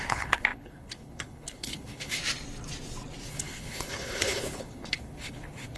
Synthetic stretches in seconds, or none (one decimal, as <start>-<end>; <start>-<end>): 0.0-2.2; 3.3-5.8

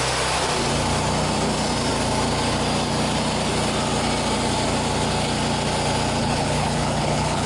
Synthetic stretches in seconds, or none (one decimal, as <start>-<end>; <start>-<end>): 6.2-7.5

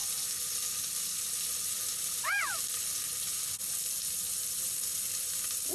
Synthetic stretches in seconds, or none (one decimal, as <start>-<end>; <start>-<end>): none

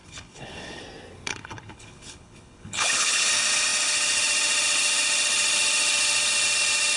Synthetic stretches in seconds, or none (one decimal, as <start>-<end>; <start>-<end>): 0.0-0.8; 1.3-3.3

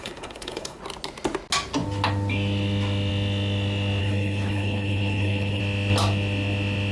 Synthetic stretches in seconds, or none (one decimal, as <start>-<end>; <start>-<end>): 0.0-0.8; 4.0-5.6

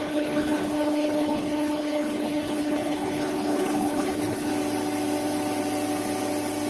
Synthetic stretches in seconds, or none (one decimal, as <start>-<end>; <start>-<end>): 0.0-4.5